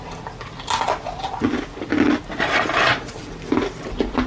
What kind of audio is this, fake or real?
real